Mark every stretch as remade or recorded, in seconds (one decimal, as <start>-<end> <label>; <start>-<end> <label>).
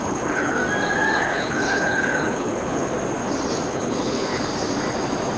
0.0-0.6 remade; 0.6-1.2 recorded; 1.2-2.9 remade; 2.9-3.7 recorded; 3.7-4.5 remade; 4.5-5.4 recorded